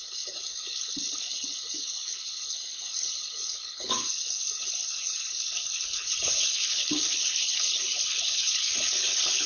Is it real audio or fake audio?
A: fake